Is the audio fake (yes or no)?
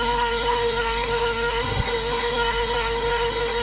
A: yes